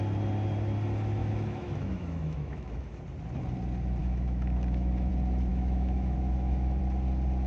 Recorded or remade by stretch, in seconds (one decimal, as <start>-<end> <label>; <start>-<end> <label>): 0.0-1.2 recorded; 1.2-3.0 remade; 3.0-4.0 recorded; 4.0-5.1 remade; 5.1-5.5 recorded; 5.5-6.8 remade; 6.8-7.5 recorded